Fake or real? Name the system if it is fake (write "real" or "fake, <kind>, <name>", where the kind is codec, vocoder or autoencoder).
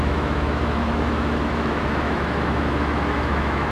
fake, autoencoder, DAC-VAE